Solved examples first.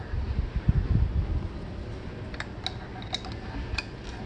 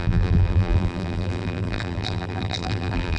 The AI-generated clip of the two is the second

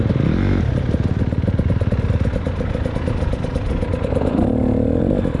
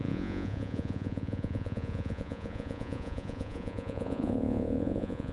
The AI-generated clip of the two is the second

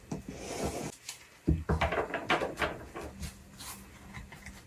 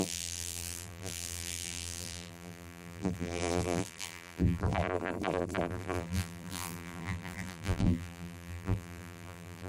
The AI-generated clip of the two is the second